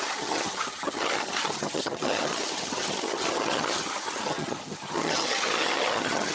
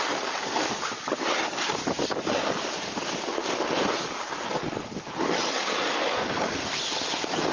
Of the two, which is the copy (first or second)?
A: first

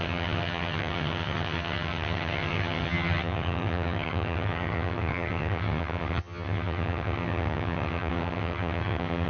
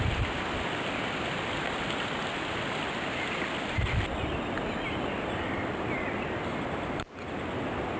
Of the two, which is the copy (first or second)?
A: first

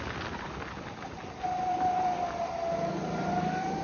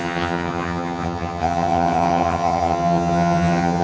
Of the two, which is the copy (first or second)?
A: second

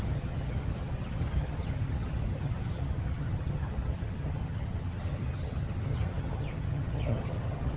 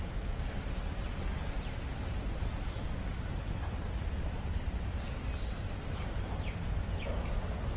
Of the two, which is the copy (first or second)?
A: first